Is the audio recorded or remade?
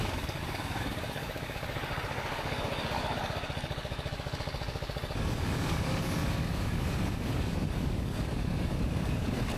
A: remade